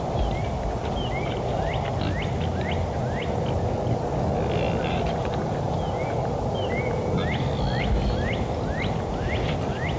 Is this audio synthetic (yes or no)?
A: no